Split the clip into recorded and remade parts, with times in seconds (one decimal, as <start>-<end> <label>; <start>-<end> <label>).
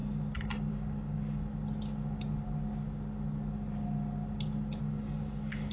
0.0-0.7 recorded; 0.7-1.4 remade; 1.4-4.8 recorded; 4.8-5.7 remade